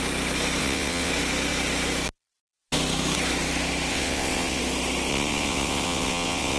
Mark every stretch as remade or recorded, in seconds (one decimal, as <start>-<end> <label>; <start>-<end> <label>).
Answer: 0.0-0.6 recorded; 0.6-1.1 remade; 1.1-3.9 recorded; 3.9-4.6 remade; 4.6-5.1 recorded; 5.1-6.6 remade